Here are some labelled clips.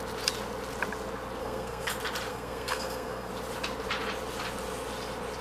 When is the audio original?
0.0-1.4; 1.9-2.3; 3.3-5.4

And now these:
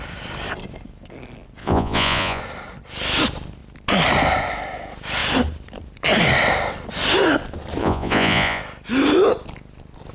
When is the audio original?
0.0-1.6; 2.4-7.8; 8.6-10.1

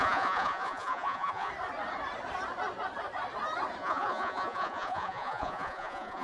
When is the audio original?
1.5-3.8

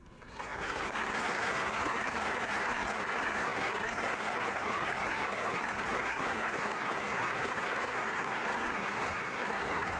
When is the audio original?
none

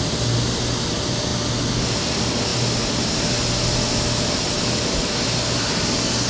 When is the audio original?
0.0-6.3

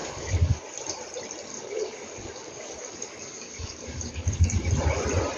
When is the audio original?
0.6-1.5; 4.7-5.4

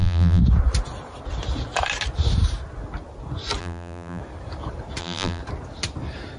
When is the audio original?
0.4-3.6; 4.2-5.0; 5.4-6.4